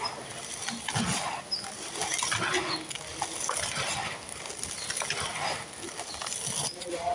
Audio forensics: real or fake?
real